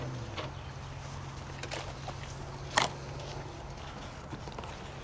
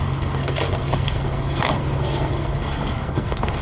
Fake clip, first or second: second